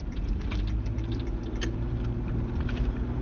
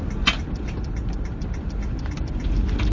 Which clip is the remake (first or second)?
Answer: first